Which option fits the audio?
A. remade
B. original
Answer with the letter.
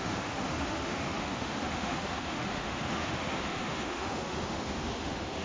A